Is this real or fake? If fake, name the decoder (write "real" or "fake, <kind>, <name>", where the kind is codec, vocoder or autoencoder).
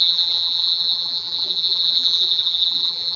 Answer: fake, vocoder, BigVGAN v2